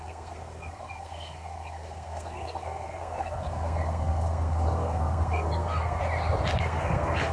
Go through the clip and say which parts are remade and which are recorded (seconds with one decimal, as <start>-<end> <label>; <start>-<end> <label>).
0.0-6.0 remade; 6.0-6.6 recorded; 6.6-7.3 remade